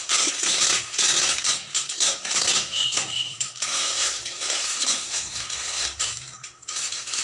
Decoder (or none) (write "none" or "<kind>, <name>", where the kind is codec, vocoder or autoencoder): codec, SNAC